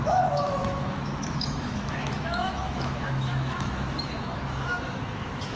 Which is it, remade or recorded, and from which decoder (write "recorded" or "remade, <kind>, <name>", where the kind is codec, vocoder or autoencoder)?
remade, autoencoder, DAC-VAE